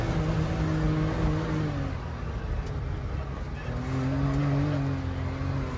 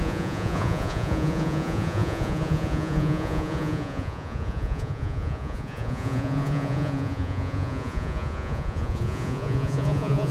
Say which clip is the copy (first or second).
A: second